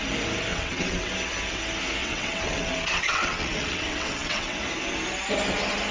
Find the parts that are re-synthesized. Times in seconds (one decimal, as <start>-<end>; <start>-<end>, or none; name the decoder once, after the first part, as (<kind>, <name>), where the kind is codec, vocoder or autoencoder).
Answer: 0.5-1.1 (vocoder, WaveNeXt); 2.0-4.6